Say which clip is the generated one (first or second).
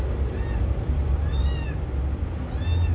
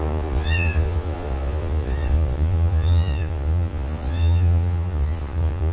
second